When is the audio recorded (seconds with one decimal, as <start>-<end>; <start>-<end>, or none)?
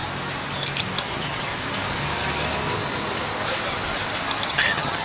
0.0-1.0; 1.5-4.5